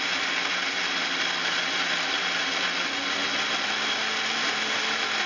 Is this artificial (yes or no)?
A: no